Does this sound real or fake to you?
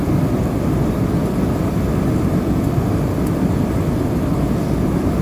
real